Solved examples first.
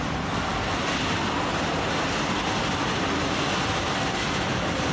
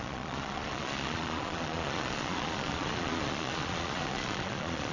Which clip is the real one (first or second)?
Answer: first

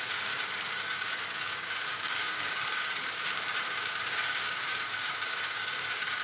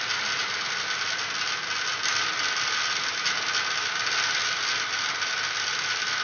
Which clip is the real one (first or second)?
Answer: second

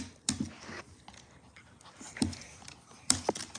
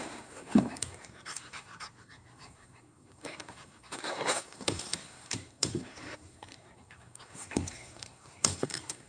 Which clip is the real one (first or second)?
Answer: first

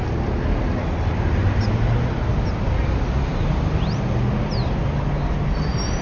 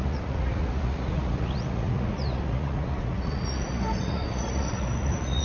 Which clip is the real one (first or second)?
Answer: first